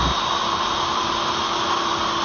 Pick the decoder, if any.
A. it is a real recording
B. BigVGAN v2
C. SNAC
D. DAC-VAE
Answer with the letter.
A